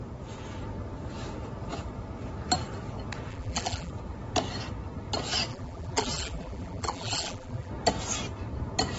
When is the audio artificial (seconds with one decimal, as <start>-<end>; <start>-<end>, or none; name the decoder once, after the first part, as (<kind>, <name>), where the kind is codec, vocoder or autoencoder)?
3.3-3.9 (vocoder, BigVGAN v2); 5.5-7.7